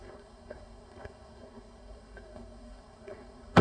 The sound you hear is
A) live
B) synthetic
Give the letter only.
B